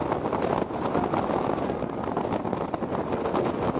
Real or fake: real